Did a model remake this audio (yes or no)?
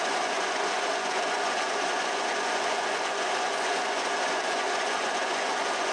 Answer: yes